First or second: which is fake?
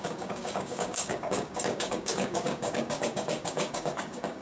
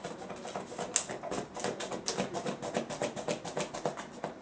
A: first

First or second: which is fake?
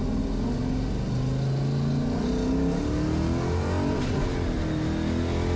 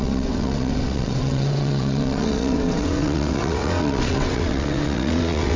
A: second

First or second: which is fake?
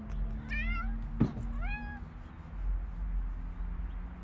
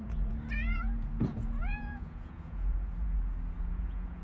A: second